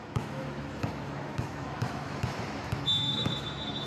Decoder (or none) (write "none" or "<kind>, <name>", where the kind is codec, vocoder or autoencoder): autoencoder, DAC-VAE